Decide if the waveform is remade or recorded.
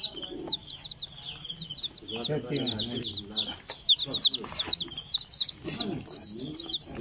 recorded